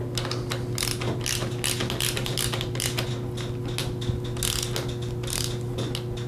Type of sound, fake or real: real